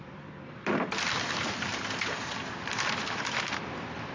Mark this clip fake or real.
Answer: fake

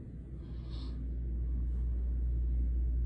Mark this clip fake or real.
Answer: real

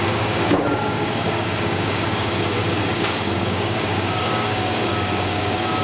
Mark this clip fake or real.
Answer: fake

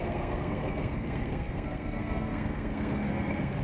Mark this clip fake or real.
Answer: fake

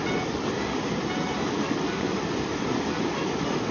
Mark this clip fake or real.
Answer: real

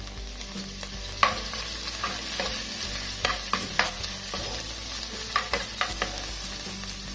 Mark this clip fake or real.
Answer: real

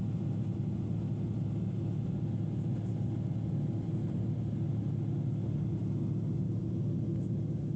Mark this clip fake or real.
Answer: real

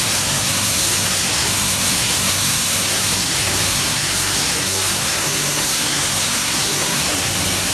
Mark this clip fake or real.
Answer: fake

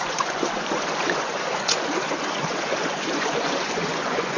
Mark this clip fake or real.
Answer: fake